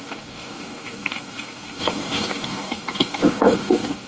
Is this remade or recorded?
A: remade